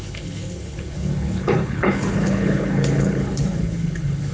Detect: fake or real fake